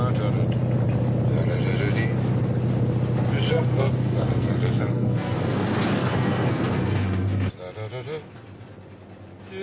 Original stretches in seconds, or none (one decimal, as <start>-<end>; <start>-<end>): 0.0-3.5; 5.6-6.0; 7.5-9.6